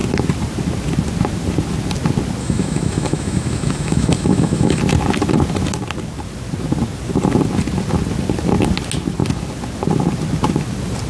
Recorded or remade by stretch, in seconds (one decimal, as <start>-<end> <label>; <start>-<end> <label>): 0.0-2.4 recorded; 2.4-4.8 remade; 4.8-11.1 recorded